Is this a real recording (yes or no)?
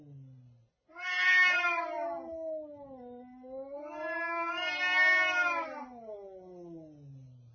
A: yes